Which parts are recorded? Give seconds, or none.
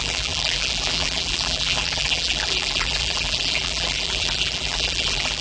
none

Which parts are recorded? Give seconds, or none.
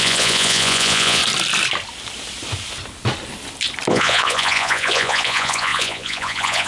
1.2-3.9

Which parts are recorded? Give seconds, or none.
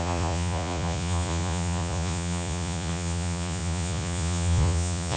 none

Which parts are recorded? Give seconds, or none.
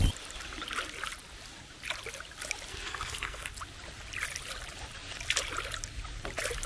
0.0-2.7; 3.5-6.7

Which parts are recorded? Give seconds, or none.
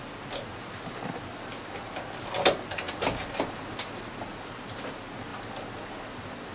0.0-6.5